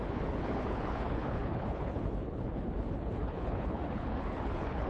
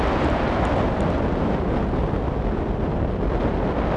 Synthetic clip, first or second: first